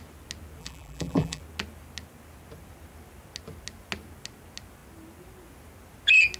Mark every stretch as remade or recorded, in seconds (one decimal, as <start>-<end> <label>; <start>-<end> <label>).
0.0-0.6 recorded; 0.6-1.4 remade; 1.4-6.4 recorded